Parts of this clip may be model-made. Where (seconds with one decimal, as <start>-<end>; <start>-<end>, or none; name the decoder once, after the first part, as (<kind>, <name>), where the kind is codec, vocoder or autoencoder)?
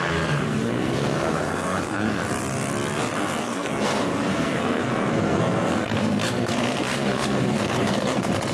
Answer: 0.0-2.2 (codec, SNAC); 3.4-8.5